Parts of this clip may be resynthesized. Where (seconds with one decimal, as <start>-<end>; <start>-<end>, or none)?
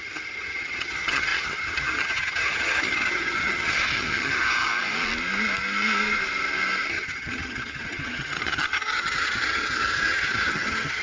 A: 0.0-4.7; 6.9-11.0